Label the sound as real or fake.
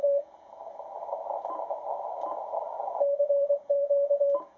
fake